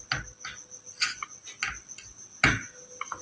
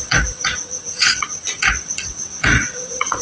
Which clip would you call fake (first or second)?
second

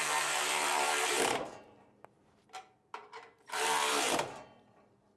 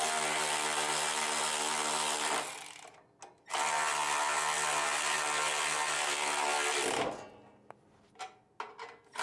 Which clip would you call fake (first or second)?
first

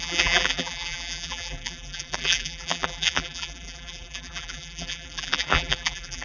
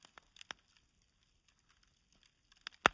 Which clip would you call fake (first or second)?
first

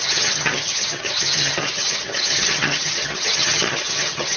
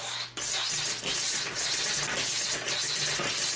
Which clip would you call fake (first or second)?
first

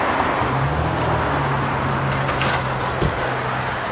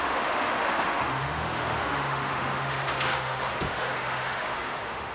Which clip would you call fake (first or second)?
second